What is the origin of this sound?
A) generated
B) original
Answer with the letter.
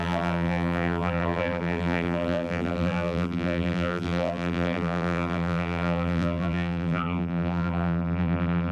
A